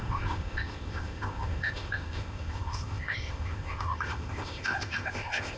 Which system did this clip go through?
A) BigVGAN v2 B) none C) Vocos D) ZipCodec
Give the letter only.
D